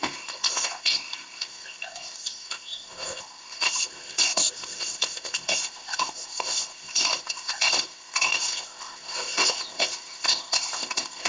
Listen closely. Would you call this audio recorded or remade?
remade